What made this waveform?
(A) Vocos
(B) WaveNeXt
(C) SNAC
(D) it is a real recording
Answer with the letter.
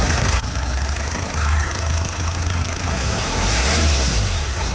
C